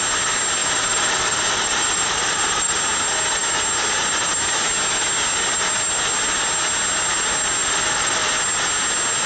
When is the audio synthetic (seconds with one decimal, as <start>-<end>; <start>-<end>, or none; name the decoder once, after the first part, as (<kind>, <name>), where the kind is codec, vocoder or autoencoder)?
0.6-2.8 (vocoder, BigVGAN v2); 7.6-8.3